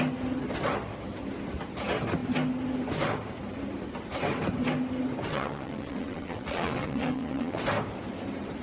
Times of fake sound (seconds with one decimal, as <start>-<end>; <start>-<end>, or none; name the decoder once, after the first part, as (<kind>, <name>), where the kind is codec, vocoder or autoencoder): 5.3-7.6 (vocoder, WaveNeXt)